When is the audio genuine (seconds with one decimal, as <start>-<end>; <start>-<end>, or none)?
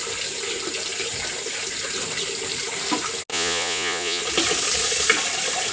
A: 0.0-3.3; 4.2-5.7